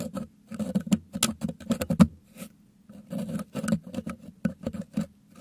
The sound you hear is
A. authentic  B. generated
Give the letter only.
A